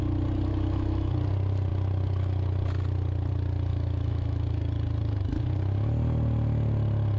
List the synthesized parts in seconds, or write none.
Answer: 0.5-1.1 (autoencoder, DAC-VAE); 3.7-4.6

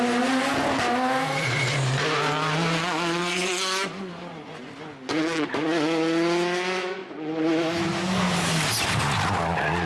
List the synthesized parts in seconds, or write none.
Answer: 3.2-4.7 (vocoder, Vocos); 7.0-7.8

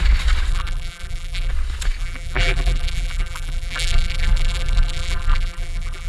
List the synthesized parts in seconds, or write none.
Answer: 0.5-1.5 (vocoder, BigVGAN v2); 2.0-6.1

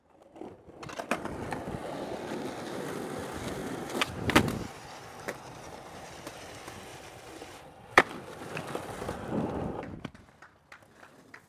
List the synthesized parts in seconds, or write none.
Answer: 3.6-5.0 (vocoder, BigVGAN v2); 6.9-10.3

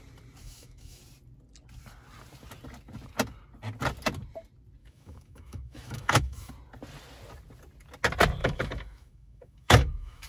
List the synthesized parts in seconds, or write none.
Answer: 0.4-1.0 (autoencoder, DAC-VAE); 4.8-6.5; 8.4-10.3

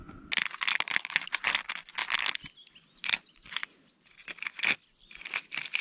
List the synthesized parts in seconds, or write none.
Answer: none

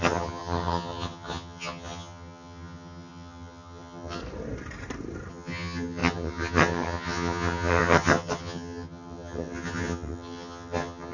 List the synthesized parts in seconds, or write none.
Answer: 0.0-4.2 (vocoder, HiFi-GAN); 5.3-11.1

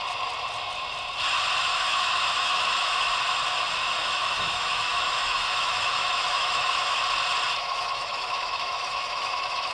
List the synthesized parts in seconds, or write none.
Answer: 1.7-3.1 (autoencoder, DAC-VAE); 4.0-7.0; 7.6-9.7